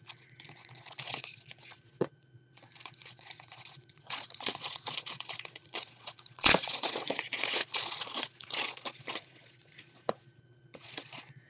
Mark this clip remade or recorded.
remade